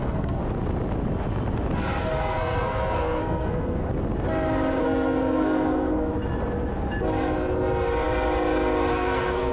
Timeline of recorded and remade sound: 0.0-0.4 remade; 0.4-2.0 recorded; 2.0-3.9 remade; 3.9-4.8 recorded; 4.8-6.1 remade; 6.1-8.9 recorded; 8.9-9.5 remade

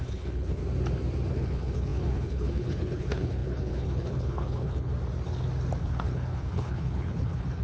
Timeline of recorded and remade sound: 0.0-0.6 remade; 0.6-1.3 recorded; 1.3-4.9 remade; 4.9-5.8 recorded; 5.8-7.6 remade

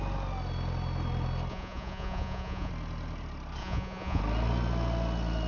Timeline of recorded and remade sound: 0.0-1.5 recorded; 1.5-2.7 remade; 2.7-3.6 recorded; 3.6-4.2 remade; 4.2-5.5 recorded